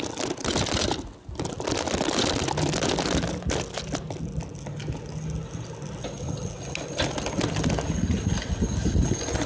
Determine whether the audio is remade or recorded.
recorded